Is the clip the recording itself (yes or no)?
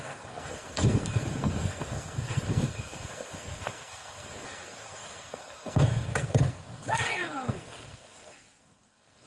no